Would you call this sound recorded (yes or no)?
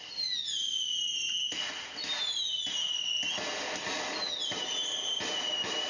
yes